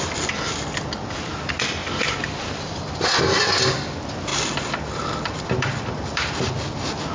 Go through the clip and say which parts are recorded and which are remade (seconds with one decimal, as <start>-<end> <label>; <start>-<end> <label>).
0.0-1.8 recorded; 1.8-3.0 remade; 3.0-4.3 recorded; 4.3-6.3 remade; 6.3-7.1 recorded